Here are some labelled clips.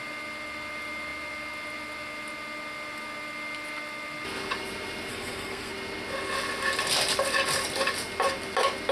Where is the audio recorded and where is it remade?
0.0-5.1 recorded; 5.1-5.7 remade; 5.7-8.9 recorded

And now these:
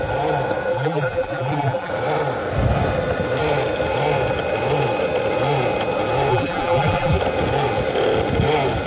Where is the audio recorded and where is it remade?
0.0-0.7 recorded; 0.7-1.9 remade; 1.9-6.3 recorded; 6.3-7.2 remade; 7.2-8.9 recorded